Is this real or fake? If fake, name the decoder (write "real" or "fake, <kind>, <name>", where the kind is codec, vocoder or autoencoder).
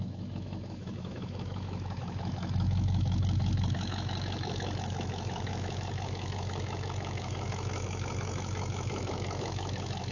fake, autoencoder, DAC-VAE